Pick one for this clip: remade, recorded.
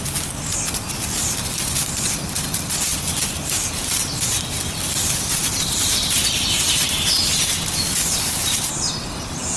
recorded